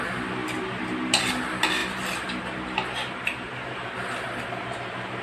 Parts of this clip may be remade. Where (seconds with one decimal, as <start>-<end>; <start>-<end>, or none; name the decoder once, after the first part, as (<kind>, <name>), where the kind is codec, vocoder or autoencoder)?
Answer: none